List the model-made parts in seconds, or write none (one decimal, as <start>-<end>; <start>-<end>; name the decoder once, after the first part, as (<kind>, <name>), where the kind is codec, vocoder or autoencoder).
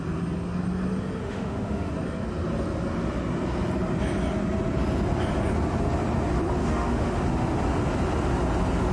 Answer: 1.2-1.9 (autoencoder, DAC-VAE); 6.6-7.2